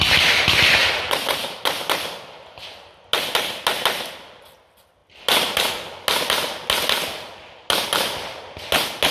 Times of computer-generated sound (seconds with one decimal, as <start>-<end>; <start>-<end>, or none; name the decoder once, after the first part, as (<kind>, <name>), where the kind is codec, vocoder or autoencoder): none